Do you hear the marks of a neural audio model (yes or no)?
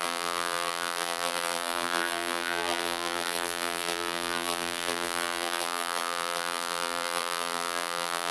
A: yes